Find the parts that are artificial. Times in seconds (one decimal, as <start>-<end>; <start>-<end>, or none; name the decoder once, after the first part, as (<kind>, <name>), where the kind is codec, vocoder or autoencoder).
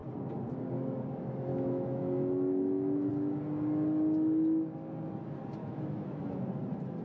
1.5-3.1 (autoencoder, DAC-VAE); 5.6-6.2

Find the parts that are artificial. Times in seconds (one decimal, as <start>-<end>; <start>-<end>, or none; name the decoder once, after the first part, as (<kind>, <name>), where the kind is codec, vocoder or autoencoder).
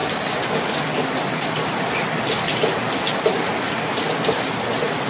none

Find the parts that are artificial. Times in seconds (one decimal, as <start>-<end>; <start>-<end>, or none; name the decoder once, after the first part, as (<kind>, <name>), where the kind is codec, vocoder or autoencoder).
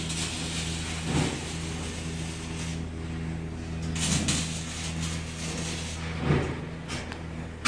none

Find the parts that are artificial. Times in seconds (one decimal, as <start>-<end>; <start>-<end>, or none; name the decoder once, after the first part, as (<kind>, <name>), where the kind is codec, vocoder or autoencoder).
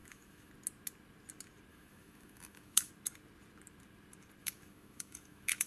0.0-0.5 (autoencoder, DAC-VAE); 1.7-2.9; 4.4-5.7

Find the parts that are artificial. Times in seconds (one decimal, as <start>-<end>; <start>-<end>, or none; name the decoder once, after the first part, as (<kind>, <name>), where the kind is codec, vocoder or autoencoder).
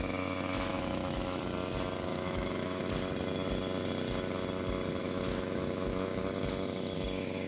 0.7-1.4 (autoencoder, DAC-VAE); 2.1-2.8; 5.0-6.2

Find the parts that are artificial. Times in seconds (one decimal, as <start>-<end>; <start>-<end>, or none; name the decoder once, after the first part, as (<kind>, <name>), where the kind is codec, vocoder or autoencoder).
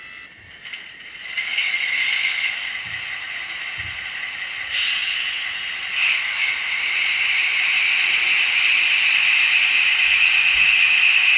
none